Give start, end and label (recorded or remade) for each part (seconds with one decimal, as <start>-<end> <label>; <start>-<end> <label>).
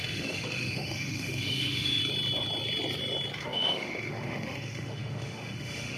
0.0-2.0 remade; 2.0-3.4 recorded; 3.4-6.0 remade